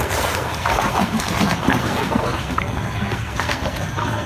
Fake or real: fake